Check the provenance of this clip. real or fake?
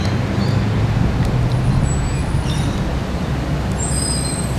real